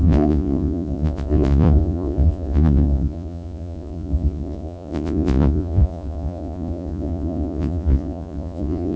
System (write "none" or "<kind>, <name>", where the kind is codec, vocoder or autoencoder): vocoder, Vocos